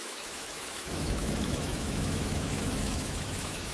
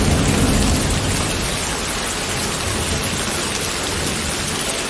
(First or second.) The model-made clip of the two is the first